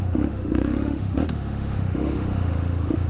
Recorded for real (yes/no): no